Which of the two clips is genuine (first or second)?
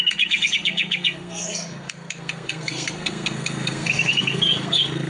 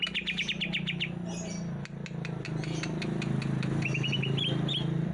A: second